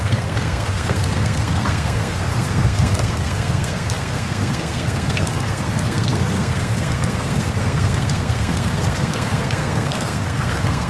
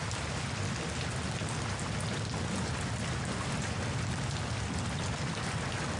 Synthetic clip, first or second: first